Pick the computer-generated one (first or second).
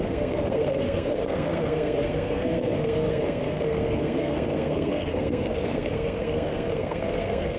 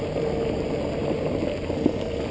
first